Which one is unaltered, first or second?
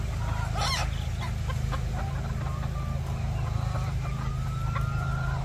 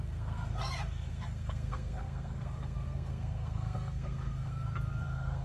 first